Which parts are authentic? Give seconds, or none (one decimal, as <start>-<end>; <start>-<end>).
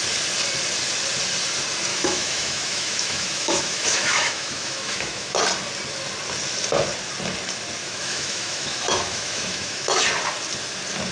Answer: 0.0-1.9; 5.4-7.8; 10.0-11.1